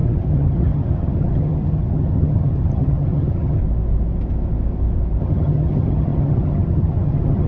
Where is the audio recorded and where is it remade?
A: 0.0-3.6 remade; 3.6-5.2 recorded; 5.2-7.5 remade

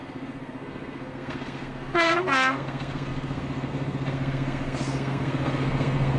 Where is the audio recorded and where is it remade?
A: 0.0-6.2 remade

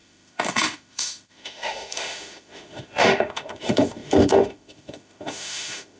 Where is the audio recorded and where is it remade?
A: 0.0-6.0 remade